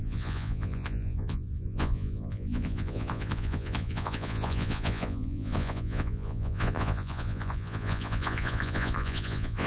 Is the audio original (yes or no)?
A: no